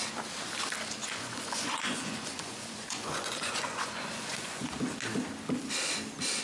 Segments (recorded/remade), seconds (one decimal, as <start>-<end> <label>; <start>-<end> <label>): 0.0-1.0 recorded; 1.0-4.8 remade; 4.8-6.4 recorded